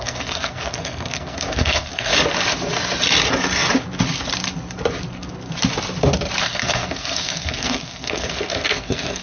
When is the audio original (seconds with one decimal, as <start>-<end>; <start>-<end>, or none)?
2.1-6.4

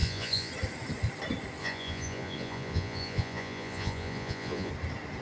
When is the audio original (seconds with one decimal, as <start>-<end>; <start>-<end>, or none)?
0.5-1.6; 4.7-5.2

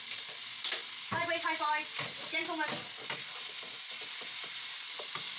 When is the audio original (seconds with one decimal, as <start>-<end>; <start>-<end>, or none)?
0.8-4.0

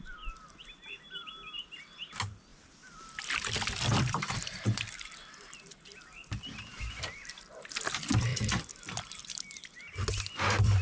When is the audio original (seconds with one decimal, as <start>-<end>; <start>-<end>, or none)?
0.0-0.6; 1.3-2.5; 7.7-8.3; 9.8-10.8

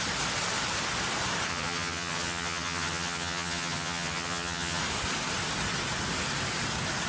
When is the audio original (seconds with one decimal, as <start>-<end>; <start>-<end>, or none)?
0.0-1.5; 4.8-7.1

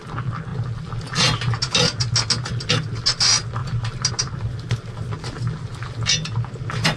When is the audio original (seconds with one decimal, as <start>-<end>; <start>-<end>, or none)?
0.0-7.0

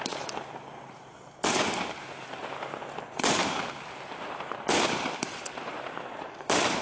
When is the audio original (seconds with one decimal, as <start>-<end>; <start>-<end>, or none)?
2.4-4.7